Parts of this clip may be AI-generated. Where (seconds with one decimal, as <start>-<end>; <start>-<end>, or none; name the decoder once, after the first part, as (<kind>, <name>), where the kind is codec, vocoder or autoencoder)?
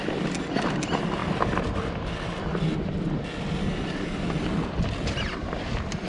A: none